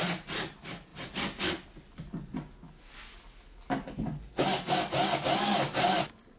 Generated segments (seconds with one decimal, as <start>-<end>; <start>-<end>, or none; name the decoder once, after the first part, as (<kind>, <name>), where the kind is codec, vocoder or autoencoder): none